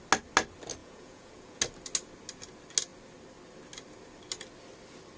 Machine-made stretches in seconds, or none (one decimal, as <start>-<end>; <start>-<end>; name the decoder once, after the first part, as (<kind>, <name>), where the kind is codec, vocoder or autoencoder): 0.8-1.6 (vocoder, Vocos)